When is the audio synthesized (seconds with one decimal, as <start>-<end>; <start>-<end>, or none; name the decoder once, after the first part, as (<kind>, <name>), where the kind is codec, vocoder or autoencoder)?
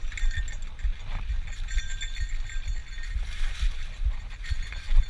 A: none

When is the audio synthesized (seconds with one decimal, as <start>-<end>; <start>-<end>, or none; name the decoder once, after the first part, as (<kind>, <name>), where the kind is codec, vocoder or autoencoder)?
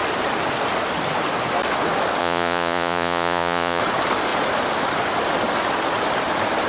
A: 2.2-3.8 (vocoder, Vocos)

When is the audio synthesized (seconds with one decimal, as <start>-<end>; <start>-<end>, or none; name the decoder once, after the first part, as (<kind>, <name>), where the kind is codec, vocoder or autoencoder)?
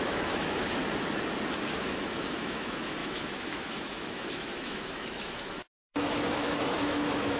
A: 0.0-0.8 (autoencoder, DAC-VAE); 1.8-7.4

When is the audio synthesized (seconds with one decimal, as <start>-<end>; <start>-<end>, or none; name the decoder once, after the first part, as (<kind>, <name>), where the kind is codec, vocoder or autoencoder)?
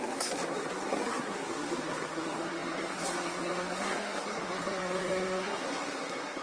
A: 0.0-6.4 (codec, SNAC)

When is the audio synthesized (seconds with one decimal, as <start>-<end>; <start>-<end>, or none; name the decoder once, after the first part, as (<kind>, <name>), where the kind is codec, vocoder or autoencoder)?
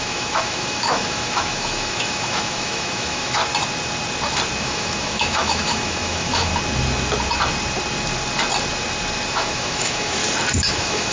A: 0.0-3.4 (autoencoder, DAC-VAE); 4.6-6.5; 9.3-10.2; 10.7-11.1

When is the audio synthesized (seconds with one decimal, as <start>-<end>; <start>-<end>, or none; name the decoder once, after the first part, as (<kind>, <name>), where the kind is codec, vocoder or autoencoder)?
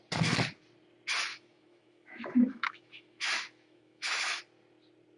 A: 1.3-4.4 (autoencoder, DAC-VAE)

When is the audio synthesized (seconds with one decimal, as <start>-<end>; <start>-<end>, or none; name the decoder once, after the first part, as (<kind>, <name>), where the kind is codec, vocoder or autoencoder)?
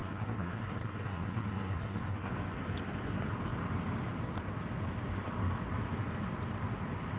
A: 0.0-2.3 (codec, SNAC)